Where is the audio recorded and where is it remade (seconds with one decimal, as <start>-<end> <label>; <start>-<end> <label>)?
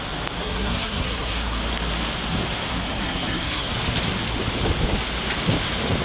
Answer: 0.0-0.4 recorded; 0.4-1.6 remade; 1.6-2.7 recorded; 2.7-3.7 remade; 3.7-6.0 recorded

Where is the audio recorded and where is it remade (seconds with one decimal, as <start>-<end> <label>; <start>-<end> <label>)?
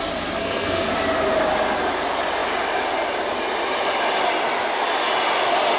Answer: 0.0-0.4 recorded; 0.4-0.9 remade; 0.9-5.8 recorded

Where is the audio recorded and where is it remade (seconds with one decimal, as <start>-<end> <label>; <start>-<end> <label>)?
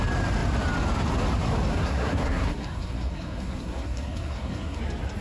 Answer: 0.0-1.7 recorded; 1.7-4.8 remade; 4.8-5.2 recorded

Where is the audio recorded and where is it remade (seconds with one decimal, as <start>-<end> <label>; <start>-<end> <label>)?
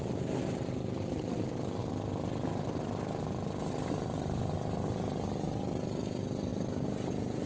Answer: 0.0-7.5 recorded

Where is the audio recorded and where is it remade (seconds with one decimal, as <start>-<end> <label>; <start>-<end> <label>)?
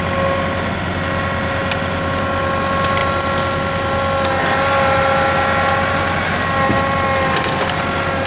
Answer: 0.0-8.3 recorded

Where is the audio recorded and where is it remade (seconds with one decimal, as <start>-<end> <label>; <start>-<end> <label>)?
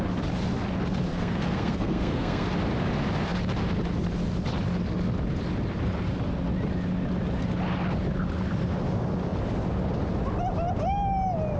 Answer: 0.0-1.1 recorded; 1.1-2.5 remade; 2.5-11.6 recorded